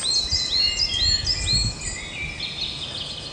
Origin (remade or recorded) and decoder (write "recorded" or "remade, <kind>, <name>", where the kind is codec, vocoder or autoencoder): recorded